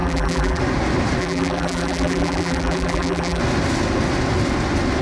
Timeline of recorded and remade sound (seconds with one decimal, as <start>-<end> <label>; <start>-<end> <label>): 0.0-0.6 remade; 0.6-1.2 recorded; 1.2-3.4 remade; 3.4-5.0 recorded